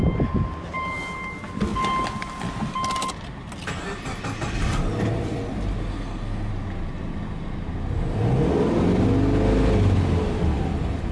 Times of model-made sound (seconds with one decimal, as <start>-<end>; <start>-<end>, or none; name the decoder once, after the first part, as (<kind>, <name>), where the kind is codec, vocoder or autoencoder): 5.9-6.5 (codec, SNAC)